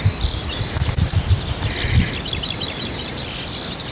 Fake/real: real